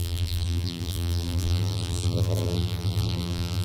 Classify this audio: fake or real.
fake